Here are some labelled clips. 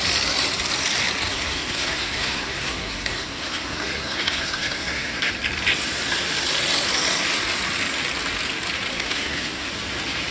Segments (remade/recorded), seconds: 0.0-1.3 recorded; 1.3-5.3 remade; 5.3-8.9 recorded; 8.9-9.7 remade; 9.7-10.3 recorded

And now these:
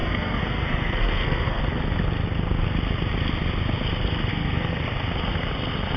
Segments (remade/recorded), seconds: 0.0-1.6 remade; 1.6-4.3 recorded; 4.3-4.8 remade; 4.8-6.0 recorded

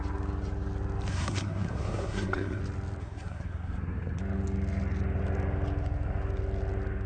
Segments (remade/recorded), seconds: 0.0-1.1 recorded; 1.1-2.6 remade; 2.6-3.0 recorded; 3.0-4.2 remade; 4.2-7.1 recorded

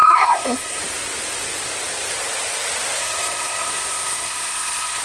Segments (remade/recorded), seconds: 0.0-0.8 remade; 0.8-3.0 recorded; 3.0-5.0 remade

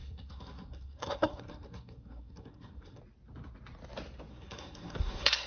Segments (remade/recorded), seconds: 0.0-3.0 remade; 3.0-4.3 recorded; 4.3-5.5 remade